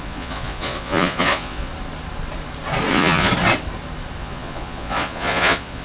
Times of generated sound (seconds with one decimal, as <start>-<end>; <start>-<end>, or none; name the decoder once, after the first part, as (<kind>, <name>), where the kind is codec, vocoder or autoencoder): 0.0-1.7 (vocoder, Vocos); 2.9-3.3; 4.2-5.8